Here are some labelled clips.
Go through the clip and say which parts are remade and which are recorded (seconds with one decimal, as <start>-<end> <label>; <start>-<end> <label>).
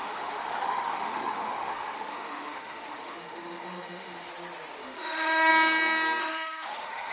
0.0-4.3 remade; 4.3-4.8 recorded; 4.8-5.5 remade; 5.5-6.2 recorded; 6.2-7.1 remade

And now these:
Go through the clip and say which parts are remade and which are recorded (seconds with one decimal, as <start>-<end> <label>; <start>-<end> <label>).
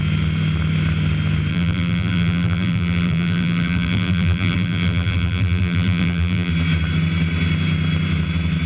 0.0-1.5 recorded; 1.5-6.5 remade; 6.5-8.7 recorded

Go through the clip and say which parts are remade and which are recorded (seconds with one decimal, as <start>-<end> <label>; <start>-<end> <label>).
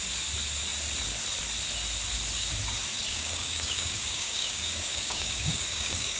0.0-3.0 recorded; 3.0-6.2 remade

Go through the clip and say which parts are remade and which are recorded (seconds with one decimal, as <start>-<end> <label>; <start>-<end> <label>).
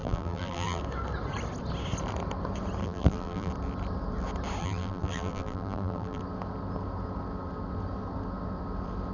0.0-0.8 remade; 0.8-2.8 recorded; 2.8-3.5 remade; 3.5-4.6 recorded; 4.6-6.2 remade; 6.2-9.1 recorded